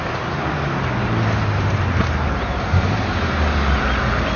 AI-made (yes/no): no